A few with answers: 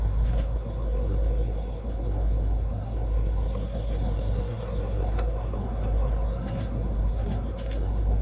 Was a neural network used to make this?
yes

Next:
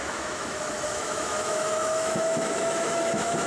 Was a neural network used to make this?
yes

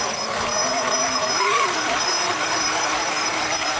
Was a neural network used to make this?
yes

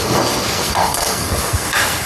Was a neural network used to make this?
yes